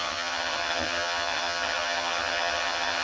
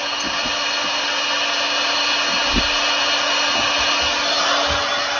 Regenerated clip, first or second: first